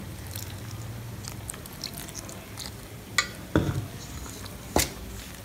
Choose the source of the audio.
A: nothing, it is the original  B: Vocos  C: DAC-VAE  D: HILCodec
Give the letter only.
A